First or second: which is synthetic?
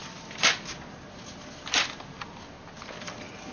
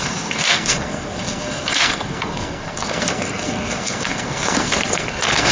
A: second